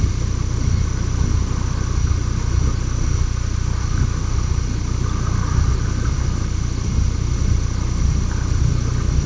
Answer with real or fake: real